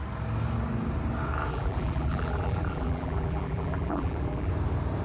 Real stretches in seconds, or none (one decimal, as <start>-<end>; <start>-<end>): 0.0-1.5; 4.5-5.0